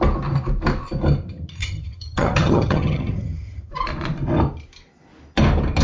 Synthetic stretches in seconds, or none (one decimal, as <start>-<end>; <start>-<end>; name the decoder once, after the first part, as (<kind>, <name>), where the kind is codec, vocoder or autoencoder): 1.6-3.7 (vocoder, HiFi-GAN)